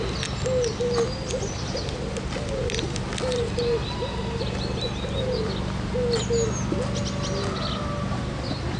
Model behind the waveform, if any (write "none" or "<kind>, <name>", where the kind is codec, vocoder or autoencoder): none